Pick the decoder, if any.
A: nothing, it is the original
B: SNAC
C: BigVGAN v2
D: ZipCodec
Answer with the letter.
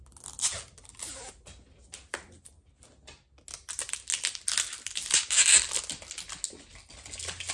A